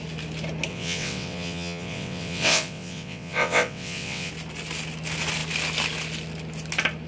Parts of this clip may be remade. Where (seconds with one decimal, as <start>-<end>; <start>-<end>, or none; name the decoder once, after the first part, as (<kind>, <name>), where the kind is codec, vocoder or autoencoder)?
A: 0.7-4.3 (vocoder, WaveNeXt)